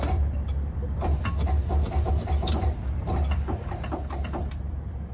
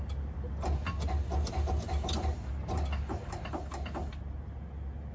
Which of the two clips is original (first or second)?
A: second